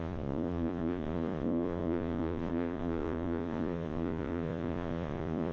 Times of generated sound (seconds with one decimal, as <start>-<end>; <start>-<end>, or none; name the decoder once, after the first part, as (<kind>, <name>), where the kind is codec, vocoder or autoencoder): 0.0-5.5 (vocoder, Vocos)